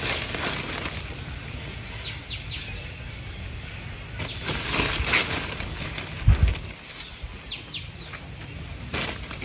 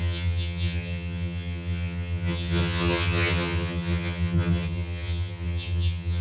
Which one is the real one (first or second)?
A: first